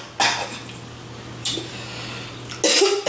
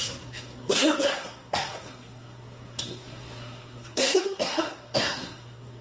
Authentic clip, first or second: first